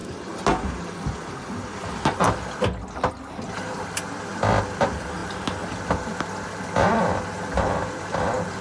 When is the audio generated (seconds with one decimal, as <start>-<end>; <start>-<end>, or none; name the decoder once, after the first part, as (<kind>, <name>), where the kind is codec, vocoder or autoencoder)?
3.1-5.2 (vocoder, BigVGAN v2); 6.6-8.6